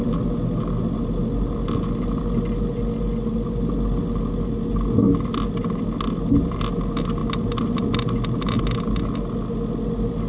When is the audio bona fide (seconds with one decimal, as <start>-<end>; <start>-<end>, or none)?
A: 0.0-10.3